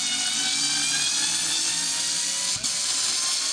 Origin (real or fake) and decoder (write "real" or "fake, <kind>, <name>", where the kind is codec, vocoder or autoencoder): real